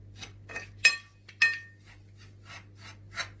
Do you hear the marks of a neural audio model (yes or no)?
no